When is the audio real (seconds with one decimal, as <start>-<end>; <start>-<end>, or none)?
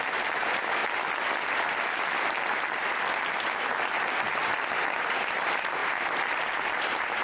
3.7-5.0